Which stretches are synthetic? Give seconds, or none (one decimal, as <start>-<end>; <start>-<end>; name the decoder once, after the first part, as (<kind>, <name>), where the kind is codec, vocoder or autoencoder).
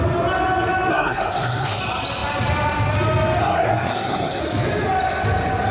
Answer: 0.9-1.8 (codec, SNAC); 3.4-4.4